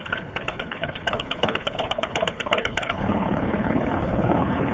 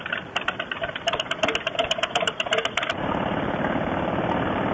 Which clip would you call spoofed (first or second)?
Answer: first